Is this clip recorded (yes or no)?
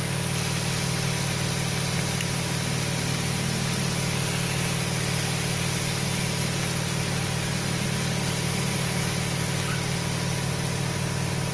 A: yes